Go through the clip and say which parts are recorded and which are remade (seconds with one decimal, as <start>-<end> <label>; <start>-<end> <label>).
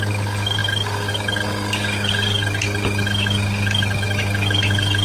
0.0-5.0 remade